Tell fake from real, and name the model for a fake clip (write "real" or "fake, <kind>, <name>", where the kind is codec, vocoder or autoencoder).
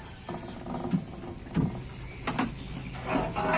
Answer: real